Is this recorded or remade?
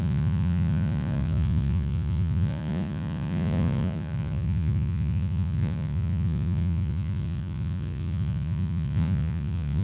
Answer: remade